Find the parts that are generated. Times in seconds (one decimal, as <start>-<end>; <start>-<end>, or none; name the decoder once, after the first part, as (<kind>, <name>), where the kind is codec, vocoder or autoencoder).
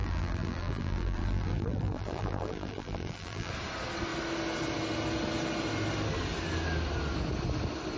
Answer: 0.0-3.5 (vocoder, BigVGAN v2)